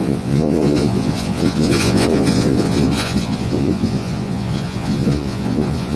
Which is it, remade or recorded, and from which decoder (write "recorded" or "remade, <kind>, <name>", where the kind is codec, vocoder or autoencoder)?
remade, vocoder, Vocos